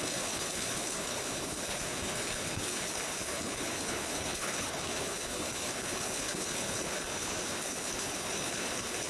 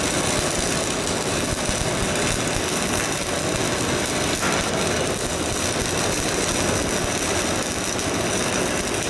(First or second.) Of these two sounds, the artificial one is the first